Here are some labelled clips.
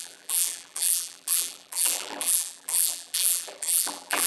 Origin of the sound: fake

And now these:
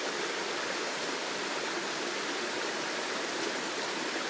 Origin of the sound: real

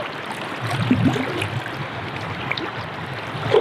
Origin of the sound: real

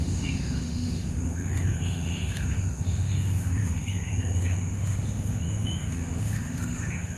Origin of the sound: fake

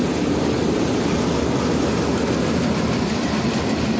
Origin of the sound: real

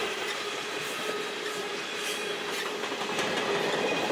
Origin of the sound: real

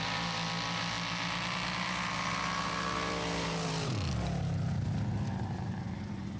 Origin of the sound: real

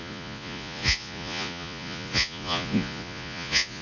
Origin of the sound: fake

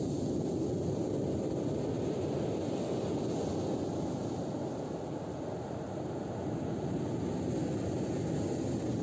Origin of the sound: real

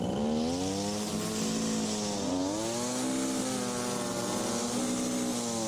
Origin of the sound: real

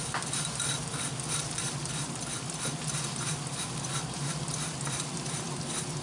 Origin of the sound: fake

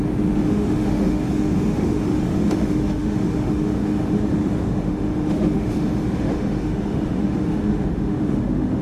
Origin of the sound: fake